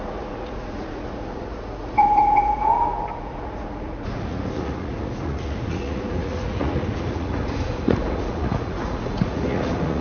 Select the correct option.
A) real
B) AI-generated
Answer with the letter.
B